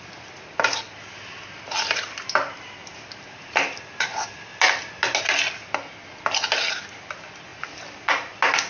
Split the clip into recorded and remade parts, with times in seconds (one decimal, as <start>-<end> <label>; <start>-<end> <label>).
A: 0.0-8.7 recorded